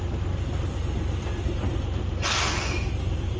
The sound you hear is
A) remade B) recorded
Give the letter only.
B